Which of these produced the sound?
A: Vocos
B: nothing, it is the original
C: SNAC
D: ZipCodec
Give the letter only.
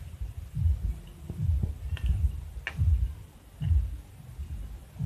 B